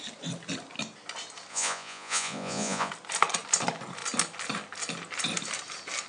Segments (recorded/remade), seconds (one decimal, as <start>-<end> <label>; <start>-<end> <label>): 0.0-1.5 recorded; 1.5-2.9 remade; 2.9-6.1 recorded